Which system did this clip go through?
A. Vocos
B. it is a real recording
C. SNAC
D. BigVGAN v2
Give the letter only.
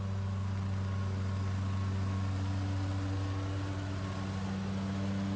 B